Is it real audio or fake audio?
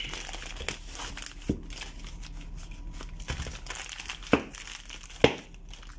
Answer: real